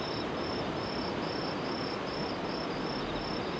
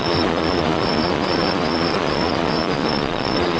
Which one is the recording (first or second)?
first